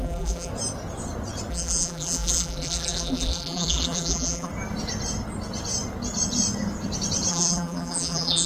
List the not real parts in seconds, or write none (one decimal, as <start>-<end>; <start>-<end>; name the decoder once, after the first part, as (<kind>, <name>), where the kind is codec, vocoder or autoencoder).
0.0-0.5 (vocoder, BigVGAN v2); 1.5-4.5; 7.3-8.5